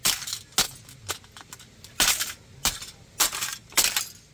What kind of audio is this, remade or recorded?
recorded